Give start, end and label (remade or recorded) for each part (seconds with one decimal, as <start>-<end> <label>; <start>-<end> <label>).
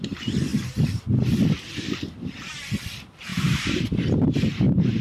0.0-3.3 recorded; 3.3-4.6 remade; 4.6-5.0 recorded